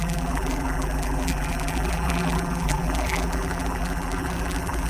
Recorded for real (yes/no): no